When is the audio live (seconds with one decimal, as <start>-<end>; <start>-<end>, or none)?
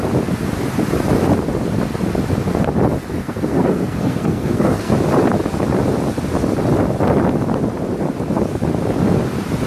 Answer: 0.0-3.2; 4.9-9.7